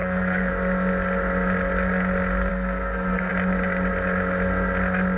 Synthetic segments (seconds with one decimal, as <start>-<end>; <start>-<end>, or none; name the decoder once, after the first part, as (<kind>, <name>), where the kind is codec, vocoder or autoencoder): 0.0-0.5 (codec, SNAC); 2.5-3.3